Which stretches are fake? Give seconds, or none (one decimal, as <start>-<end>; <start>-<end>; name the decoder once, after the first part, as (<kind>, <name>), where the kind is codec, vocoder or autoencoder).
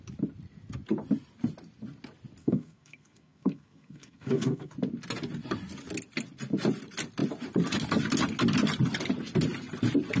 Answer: 2.4-4.7 (codec, SNAC)